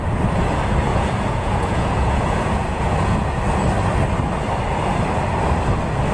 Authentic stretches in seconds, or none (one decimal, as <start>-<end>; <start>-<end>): 0.0-0.9; 3.4-6.1